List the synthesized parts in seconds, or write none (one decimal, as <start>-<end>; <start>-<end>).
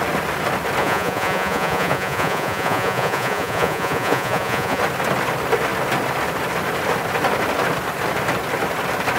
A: 0.8-4.8